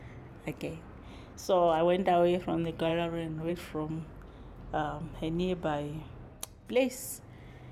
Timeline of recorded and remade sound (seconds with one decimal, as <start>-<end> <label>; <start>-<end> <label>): 0.0-7.7 recorded